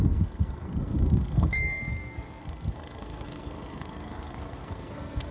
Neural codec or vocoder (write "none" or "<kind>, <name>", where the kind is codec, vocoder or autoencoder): codec, SNAC